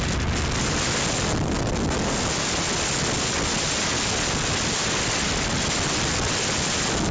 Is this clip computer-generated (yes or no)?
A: no